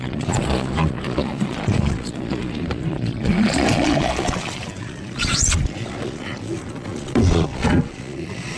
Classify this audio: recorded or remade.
remade